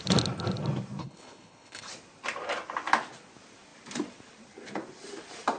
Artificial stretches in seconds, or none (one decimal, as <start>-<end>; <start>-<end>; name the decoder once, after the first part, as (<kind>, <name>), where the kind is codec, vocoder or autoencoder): 1.0-1.9 (codec, HILCodec)